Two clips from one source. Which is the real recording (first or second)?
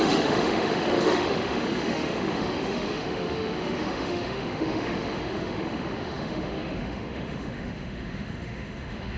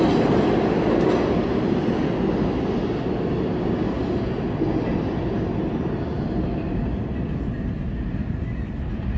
second